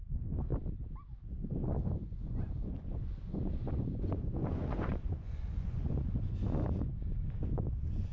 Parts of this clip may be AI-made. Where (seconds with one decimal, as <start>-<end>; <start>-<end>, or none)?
0.0-0.5; 1.3-8.1